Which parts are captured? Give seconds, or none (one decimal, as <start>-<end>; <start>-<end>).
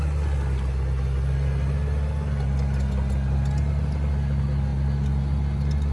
0.0-5.9